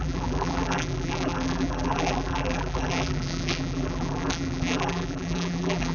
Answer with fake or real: fake